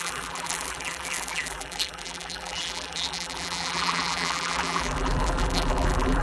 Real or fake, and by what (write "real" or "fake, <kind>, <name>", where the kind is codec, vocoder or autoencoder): fake, vocoder, BigVGAN v2